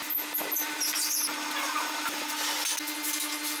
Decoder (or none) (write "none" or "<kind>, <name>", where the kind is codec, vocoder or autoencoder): none